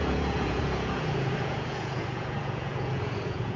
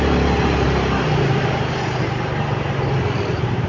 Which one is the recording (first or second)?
second